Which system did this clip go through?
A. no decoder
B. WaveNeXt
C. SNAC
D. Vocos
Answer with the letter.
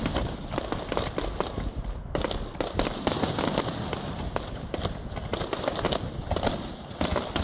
A